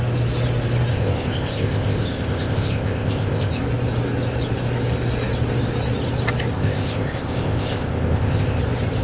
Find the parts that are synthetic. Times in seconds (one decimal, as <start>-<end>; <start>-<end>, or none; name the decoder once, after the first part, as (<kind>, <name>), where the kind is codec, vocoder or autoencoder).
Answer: 0.9-3.6 (codec, ZipCodec); 6.5-8.6